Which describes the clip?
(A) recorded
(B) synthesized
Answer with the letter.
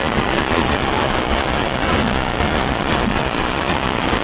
B